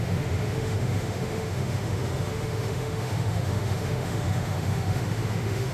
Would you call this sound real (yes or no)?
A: no